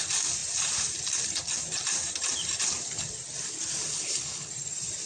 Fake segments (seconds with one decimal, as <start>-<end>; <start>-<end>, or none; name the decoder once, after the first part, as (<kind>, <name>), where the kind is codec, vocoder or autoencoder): 3.9-4.5 (codec, HILCodec)

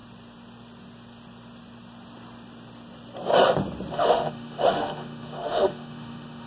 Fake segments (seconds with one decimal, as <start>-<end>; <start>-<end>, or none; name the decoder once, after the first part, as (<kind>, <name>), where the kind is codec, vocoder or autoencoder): 3.9-6.5 (autoencoder, DAC-VAE)

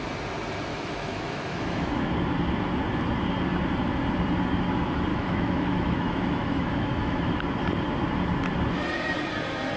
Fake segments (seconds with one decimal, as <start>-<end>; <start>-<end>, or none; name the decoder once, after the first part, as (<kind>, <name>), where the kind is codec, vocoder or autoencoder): 0.7-1.9 (autoencoder, DAC-VAE); 5.1-7.3

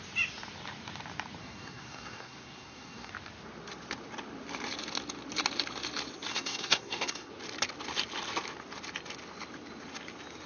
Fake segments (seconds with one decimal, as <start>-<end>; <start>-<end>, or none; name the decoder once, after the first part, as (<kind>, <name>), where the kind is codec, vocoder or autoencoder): 1.4-3.1 (codec, SNAC); 6.3-7.3

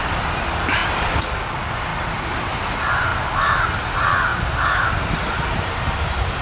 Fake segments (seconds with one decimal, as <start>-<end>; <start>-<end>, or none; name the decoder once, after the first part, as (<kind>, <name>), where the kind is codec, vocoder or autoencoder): 3.1-3.6 (vocoder, BigVGAN v2); 4.3-6.4

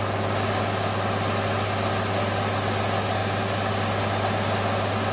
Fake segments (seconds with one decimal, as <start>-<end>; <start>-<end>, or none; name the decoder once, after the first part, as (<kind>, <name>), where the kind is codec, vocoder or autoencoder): none

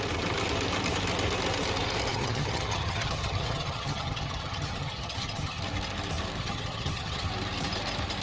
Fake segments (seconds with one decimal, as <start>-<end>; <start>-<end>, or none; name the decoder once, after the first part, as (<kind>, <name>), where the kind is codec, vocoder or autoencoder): 2.1-5.6 (vocoder, HiFi-GAN); 6.4-7.3

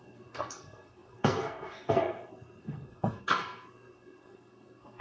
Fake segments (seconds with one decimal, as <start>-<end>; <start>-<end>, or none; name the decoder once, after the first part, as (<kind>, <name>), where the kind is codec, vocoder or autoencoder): 0.0-5.0 (codec, SNAC)